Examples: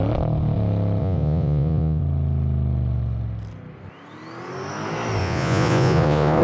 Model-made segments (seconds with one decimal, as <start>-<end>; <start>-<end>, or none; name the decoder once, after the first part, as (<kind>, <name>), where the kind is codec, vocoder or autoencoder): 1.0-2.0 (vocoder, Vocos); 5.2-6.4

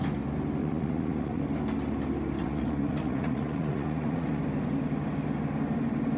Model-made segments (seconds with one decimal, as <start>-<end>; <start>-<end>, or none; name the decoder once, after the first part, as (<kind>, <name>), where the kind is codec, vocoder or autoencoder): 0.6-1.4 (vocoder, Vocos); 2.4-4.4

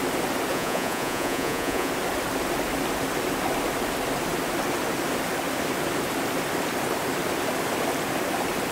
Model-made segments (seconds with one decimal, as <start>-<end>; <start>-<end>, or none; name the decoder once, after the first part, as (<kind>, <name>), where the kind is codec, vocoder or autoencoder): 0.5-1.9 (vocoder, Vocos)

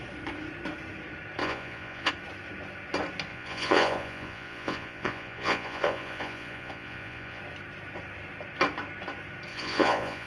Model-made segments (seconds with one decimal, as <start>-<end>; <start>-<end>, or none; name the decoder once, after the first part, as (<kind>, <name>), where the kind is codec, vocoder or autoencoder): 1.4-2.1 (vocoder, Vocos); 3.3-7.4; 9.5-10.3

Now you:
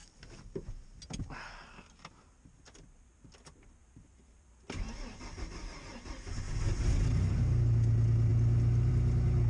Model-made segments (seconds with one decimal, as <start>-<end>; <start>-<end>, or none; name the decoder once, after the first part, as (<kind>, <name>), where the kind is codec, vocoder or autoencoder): none